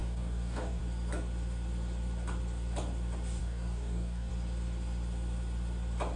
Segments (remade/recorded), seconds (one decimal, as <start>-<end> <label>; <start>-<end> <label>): 0.0-0.8 remade; 0.8-3.4 recorded; 3.4-4.3 remade; 4.3-6.2 recorded